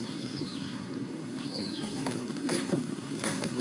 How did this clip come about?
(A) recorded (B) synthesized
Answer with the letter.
B